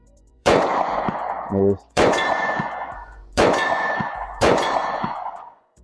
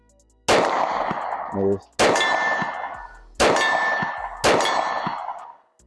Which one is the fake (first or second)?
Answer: first